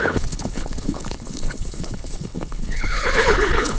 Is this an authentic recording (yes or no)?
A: no